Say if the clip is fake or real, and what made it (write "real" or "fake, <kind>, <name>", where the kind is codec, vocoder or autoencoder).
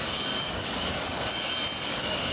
fake, codec, DAC